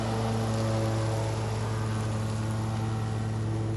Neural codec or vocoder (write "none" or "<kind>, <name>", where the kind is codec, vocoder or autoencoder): none